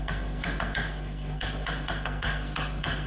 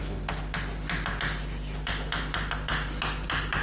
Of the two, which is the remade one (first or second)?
first